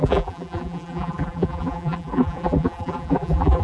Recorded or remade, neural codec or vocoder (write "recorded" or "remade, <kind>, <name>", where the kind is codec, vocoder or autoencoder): remade, vocoder, BigVGAN v2